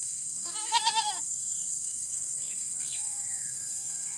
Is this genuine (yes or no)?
no